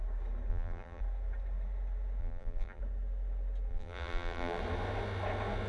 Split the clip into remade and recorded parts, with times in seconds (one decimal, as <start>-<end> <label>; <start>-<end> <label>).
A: 0.0-0.5 recorded; 0.5-1.0 remade; 1.0-2.2 recorded; 2.2-2.8 remade; 2.8-3.7 recorded; 3.7-4.6 remade; 4.6-5.7 recorded